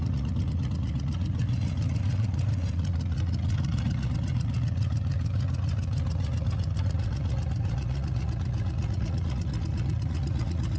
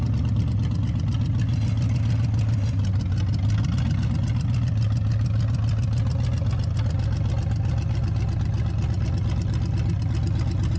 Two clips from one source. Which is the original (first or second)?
second